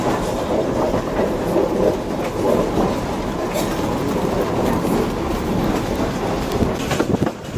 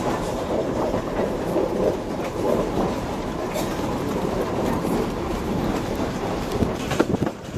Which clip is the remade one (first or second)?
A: second